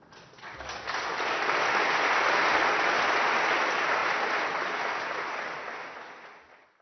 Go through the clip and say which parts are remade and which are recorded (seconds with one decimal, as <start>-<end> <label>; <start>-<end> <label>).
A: 0.0-6.8 recorded